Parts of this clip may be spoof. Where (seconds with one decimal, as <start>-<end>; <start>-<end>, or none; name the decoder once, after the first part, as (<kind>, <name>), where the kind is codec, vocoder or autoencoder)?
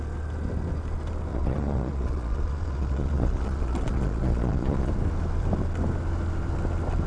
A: 1.3-4.9 (vocoder, Vocos)